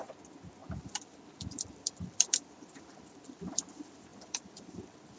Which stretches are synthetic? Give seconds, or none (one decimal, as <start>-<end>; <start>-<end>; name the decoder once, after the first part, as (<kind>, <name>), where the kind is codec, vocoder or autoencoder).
0.6-3.4 (vocoder, BigVGAN v2); 4.1-5.2